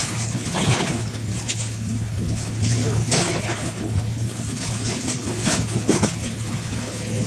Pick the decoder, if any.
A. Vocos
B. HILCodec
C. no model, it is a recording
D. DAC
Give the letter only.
B